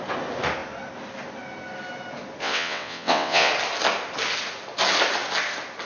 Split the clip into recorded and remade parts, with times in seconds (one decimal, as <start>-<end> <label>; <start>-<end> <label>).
0.0-2.4 recorded; 2.4-3.5 remade; 3.5-5.9 recorded